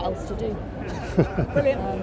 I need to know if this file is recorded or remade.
recorded